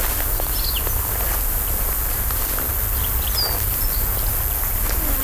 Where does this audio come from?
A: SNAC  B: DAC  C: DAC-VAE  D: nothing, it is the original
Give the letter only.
D